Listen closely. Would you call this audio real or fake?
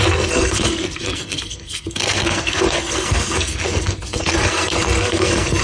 fake